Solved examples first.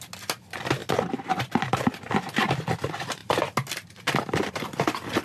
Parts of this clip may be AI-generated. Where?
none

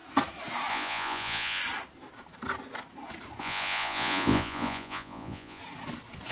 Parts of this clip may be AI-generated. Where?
0.7-1.6 (vocoder, Vocos); 3.4-5.6

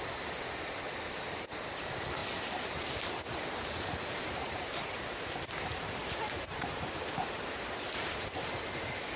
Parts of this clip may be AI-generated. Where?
2.2-5.0 (vocoder, BigVGAN v2); 6.0-8.3